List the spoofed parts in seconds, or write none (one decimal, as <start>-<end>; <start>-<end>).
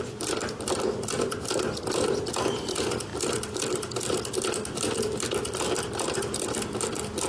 none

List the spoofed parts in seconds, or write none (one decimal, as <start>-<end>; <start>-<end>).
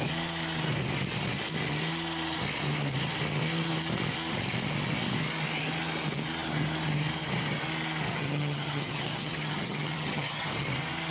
8.1-10.5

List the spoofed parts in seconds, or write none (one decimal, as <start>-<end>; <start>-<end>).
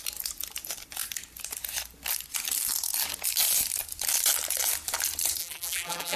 5.4-6.2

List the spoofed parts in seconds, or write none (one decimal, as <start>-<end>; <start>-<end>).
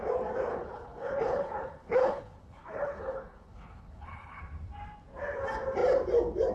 0.5-4.4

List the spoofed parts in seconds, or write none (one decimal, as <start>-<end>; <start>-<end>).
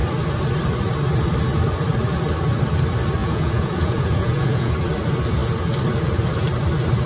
3.2-4.7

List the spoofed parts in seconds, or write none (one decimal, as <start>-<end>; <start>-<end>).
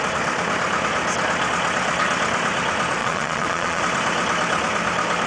3.0-3.8